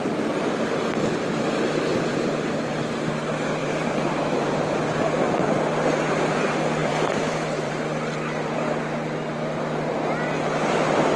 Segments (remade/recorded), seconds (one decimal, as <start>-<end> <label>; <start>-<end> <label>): 0.0-2.1 recorded; 2.1-2.8 remade; 2.8-3.6 recorded; 3.6-5.5 remade; 5.5-6.8 recorded; 6.8-7.7 remade; 7.7-11.2 recorded